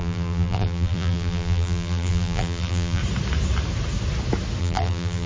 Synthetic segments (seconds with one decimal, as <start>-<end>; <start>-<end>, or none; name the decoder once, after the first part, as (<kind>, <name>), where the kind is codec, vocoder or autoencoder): 0.0-3.0 (vocoder, BigVGAN v2); 4.6-5.3